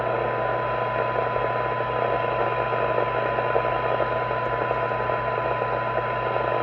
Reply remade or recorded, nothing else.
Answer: recorded